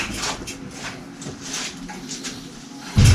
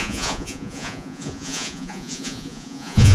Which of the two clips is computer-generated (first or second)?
second